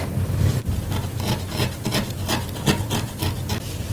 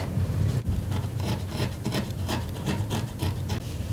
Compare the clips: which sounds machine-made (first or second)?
second